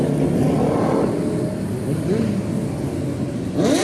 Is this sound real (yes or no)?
yes